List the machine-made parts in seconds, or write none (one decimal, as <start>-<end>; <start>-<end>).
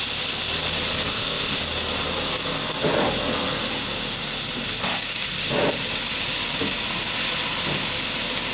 1.1-1.6